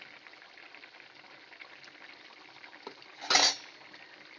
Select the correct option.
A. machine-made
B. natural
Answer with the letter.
B